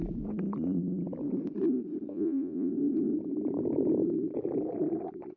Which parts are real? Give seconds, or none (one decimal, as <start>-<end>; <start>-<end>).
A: 0.0-2.1; 2.7-5.4